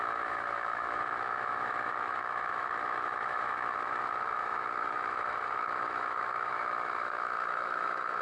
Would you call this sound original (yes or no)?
no